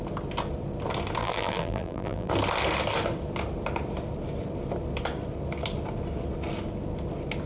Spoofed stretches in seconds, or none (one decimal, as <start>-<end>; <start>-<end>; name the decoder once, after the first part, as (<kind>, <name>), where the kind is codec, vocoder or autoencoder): 1.2-2.3 (vocoder, BigVGAN v2)